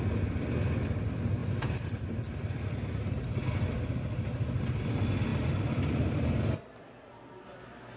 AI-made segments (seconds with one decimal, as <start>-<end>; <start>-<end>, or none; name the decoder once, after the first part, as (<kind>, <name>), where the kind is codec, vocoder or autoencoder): none